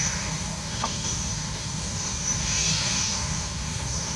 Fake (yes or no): yes